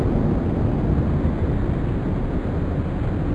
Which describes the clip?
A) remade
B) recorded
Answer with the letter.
B